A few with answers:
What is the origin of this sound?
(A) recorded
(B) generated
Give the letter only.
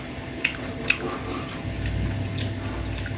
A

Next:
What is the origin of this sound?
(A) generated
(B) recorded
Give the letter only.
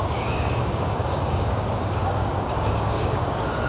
A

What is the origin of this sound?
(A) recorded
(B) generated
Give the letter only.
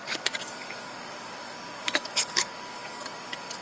B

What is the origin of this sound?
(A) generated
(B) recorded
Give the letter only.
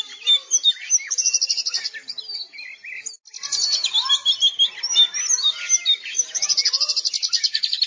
B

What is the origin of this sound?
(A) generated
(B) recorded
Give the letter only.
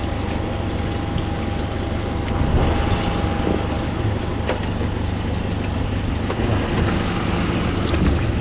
B